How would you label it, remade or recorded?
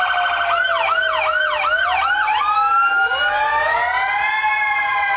recorded